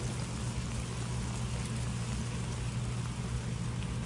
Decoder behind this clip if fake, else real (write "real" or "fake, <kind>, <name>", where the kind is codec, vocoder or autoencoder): real